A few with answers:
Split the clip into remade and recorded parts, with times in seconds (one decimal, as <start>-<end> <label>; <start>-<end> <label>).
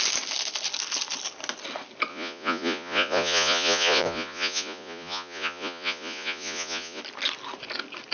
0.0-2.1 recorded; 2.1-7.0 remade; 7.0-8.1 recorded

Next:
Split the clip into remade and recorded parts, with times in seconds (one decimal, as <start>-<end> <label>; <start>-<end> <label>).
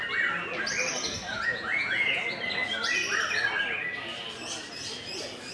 0.0-1.3 recorded; 1.3-2.2 remade; 2.2-5.5 recorded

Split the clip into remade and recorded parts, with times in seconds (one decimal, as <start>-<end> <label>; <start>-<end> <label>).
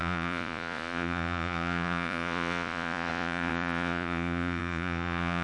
0.0-5.4 remade